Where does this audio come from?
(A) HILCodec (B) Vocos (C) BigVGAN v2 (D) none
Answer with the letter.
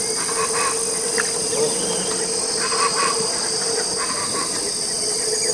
D